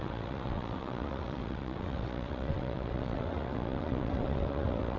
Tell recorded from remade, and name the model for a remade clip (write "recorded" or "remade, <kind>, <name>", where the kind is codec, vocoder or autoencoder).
remade, vocoder, WaveNeXt